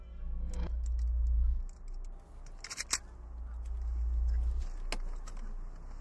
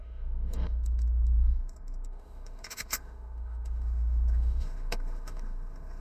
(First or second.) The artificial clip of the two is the second